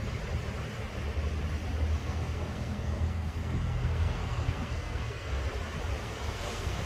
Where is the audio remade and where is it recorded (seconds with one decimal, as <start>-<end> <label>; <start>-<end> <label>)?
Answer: 0.0-2.0 recorded; 2.0-5.4 remade; 5.4-6.0 recorded; 6.0-6.9 remade